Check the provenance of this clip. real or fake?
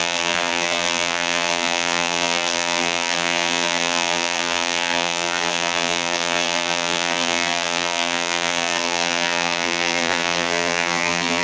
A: fake